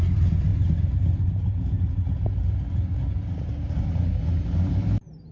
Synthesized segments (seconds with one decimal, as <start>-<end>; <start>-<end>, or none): none